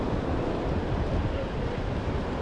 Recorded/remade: recorded